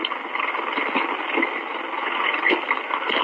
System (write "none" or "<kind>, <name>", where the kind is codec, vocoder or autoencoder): none